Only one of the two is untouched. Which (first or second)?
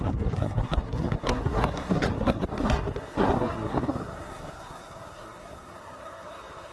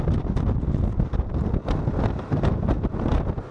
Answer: second